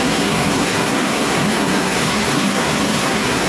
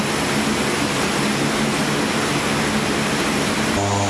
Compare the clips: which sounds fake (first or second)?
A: first